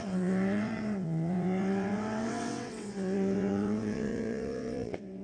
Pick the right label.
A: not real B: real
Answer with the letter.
A